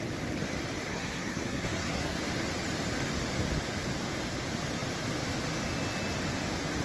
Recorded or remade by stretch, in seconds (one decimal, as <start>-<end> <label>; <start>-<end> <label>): 0.0-0.9 recorded; 0.9-2.2 remade; 2.2-6.8 recorded